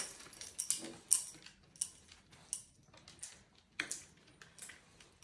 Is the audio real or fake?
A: real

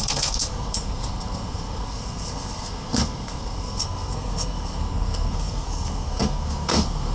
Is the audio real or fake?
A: fake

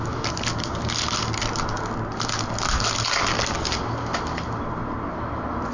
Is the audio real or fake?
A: real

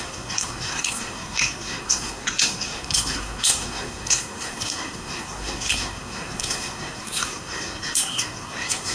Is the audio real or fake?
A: fake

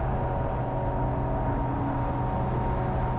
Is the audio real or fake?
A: real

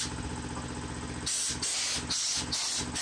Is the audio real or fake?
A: real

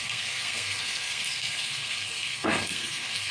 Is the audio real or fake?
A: fake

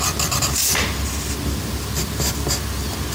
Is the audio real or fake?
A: real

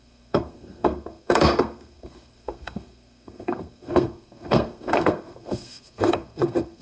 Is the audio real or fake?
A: fake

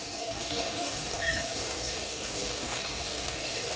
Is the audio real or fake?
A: fake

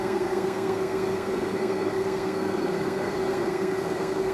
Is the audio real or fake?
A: fake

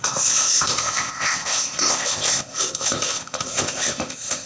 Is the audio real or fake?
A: fake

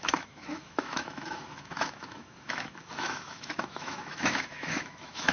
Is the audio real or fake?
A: fake